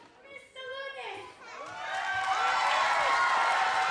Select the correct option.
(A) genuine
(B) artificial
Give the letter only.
A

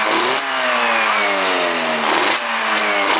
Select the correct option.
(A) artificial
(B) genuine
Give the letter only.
B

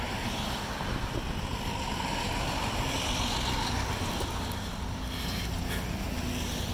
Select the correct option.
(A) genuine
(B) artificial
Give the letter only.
A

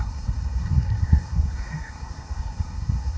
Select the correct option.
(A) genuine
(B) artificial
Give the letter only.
B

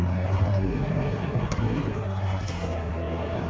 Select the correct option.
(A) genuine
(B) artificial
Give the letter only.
B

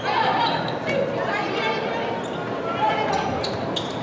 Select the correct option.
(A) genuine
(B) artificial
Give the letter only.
A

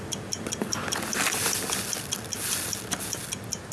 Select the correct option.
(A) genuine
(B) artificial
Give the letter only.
A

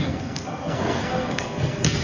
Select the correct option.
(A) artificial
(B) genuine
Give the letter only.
A